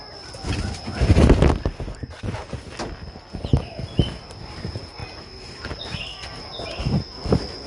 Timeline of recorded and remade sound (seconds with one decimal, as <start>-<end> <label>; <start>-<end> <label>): 0.0-7.7 recorded